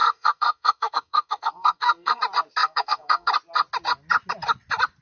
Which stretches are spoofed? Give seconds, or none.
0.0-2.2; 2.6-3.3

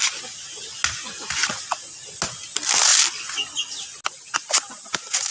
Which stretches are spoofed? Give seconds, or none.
none

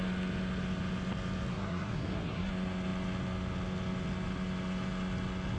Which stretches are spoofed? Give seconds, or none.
1.5-2.5

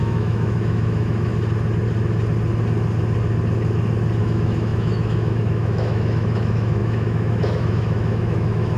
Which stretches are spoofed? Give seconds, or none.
0.0-1.3; 4.2-8.8

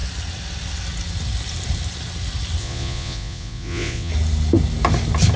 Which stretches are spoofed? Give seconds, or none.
2.6-4.1

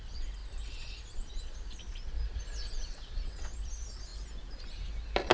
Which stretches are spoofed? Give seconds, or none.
2.9-3.5

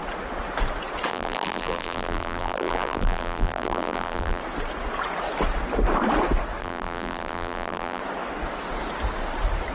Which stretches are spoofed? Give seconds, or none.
1.1-4.4; 6.6-8.0